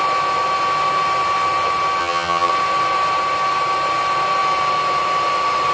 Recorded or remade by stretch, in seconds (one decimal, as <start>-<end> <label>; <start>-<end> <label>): 0.0-2.0 recorded; 2.0-2.5 remade; 2.5-5.7 recorded